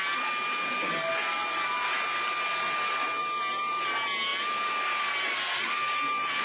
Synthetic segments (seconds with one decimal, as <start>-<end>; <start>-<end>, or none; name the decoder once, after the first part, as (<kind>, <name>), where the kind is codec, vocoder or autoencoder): none